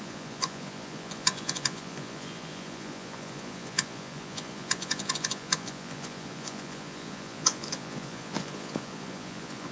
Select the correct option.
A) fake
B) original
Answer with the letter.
A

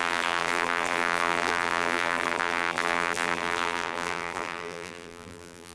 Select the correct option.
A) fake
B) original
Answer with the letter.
A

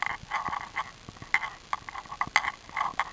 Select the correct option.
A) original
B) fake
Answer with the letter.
A